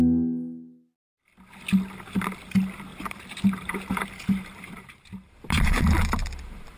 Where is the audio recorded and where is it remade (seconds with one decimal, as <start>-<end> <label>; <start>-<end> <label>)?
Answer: 0.0-2.9 recorded; 2.9-6.8 remade